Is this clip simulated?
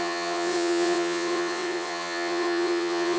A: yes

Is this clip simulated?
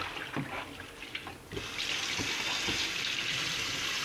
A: no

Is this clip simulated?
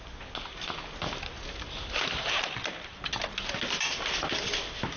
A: no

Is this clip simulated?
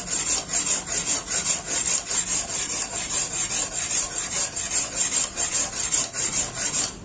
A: yes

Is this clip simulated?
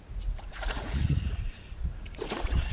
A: yes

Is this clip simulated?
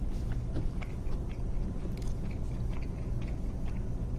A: no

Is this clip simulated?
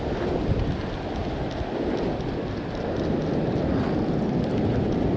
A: no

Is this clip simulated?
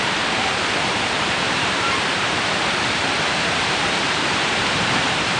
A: yes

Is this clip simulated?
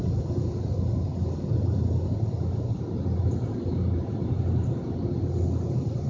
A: no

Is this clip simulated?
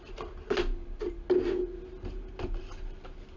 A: no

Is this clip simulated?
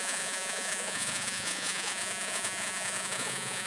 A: yes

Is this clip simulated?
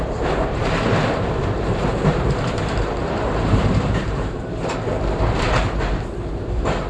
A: yes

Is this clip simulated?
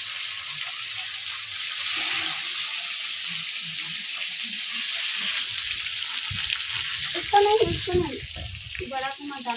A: no